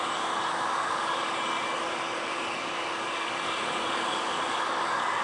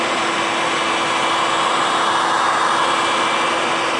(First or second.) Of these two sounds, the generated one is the first